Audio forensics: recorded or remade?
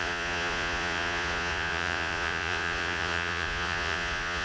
remade